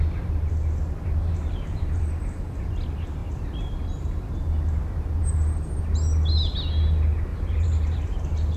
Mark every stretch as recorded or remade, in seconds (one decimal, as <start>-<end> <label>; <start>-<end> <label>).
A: 0.0-1.2 recorded; 1.2-2.0 remade; 2.0-7.3 recorded; 7.3-8.0 remade; 8.0-8.6 recorded

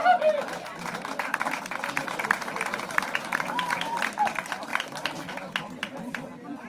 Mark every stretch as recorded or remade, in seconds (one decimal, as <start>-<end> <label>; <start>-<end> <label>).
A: 0.0-6.7 recorded

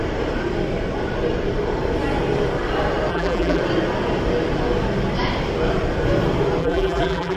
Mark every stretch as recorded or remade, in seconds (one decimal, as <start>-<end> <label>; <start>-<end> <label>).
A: 0.0-3.1 recorded; 3.1-3.6 remade; 3.6-6.6 recorded; 6.6-7.4 remade